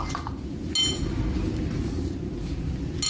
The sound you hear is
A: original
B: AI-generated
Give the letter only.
A